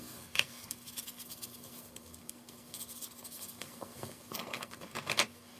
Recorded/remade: remade